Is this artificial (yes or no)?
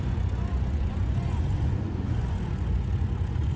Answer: yes